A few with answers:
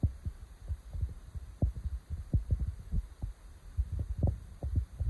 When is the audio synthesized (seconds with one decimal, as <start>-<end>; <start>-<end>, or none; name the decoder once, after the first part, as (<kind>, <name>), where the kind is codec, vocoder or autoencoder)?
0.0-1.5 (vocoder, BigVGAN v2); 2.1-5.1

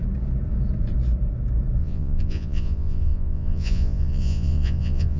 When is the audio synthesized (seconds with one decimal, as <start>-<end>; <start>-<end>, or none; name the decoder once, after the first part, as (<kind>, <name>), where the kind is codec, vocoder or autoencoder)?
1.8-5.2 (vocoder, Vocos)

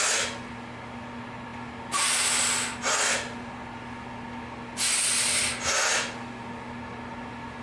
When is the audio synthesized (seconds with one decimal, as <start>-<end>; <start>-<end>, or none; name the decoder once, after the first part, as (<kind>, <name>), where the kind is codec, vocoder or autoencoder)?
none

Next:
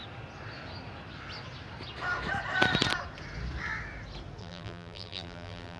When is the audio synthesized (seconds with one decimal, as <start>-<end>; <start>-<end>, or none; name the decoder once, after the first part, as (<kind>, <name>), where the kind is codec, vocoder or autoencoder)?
4.4-5.8 (vocoder, BigVGAN v2)

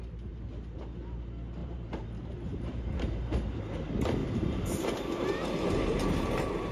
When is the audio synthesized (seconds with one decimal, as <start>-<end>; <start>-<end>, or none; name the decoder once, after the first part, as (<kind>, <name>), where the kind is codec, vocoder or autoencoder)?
1.6-3.2 (vocoder, BigVGAN v2); 4.2-6.7

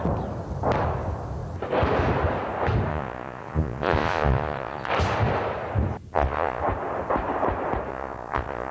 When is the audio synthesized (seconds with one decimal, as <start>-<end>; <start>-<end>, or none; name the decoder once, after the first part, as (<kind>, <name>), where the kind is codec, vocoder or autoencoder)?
2.9-4.9 (vocoder, Vocos); 6.1-6.6; 7.9-8.7